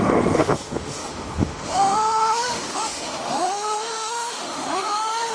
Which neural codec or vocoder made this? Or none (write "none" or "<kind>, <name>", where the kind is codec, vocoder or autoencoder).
autoencoder, DAC-VAE